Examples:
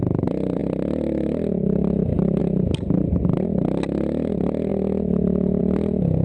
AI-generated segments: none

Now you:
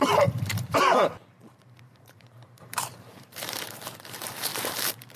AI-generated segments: 0.0-5.2 (vocoder, BigVGAN v2)

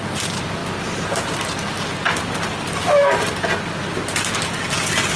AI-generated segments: none